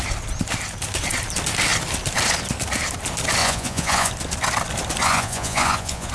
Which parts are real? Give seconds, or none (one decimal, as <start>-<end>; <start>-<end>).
0.0-3.4; 4.1-5.0